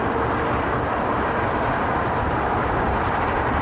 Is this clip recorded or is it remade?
recorded